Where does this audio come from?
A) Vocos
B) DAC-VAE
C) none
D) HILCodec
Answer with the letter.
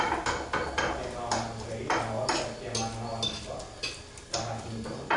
C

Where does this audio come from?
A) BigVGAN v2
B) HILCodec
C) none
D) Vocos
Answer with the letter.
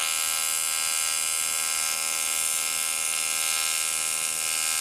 C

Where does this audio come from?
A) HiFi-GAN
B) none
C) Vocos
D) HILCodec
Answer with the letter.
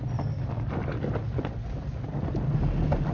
B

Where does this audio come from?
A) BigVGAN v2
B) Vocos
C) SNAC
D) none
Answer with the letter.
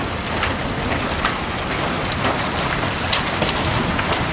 D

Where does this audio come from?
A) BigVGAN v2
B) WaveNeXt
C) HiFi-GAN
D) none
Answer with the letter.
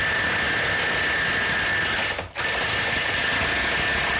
D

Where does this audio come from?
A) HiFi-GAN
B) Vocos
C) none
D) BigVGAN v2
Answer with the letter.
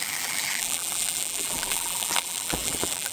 D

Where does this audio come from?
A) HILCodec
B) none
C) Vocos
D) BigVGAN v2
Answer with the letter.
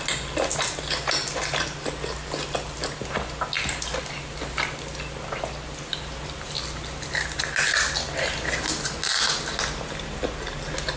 B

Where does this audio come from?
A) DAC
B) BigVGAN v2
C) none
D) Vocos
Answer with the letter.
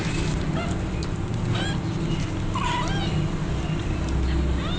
C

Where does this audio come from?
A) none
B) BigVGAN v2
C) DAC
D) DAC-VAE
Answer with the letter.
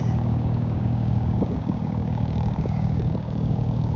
C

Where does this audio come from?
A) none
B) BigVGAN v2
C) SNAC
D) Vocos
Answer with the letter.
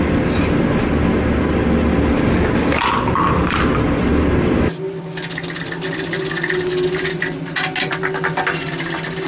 A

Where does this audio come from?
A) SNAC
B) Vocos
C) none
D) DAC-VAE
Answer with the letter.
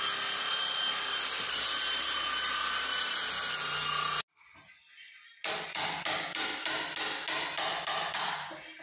C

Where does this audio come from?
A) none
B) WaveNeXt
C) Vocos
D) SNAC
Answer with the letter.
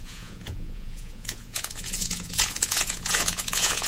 C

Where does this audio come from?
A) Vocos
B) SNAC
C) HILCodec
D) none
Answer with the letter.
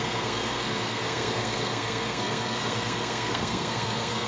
B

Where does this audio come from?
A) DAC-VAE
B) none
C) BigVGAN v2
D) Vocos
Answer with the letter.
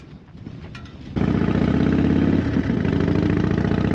B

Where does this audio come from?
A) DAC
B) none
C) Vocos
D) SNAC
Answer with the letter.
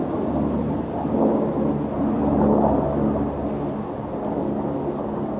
B